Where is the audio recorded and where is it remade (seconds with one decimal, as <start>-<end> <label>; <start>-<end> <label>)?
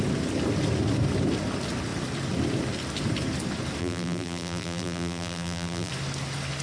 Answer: 0.0-3.8 recorded; 3.8-5.9 remade; 5.9-6.6 recorded